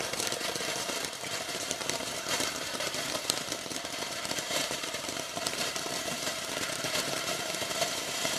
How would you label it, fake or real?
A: fake